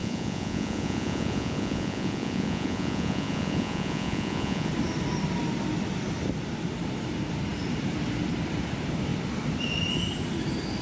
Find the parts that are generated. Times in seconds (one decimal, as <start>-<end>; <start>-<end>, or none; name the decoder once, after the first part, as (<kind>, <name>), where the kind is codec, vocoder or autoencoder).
0.0-4.7 (vocoder, Vocos)